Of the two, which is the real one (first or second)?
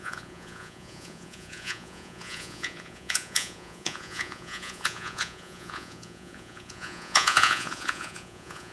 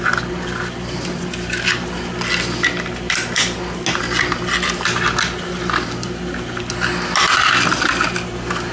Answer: second